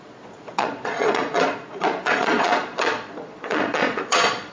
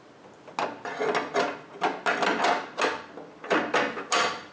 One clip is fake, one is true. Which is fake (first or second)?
first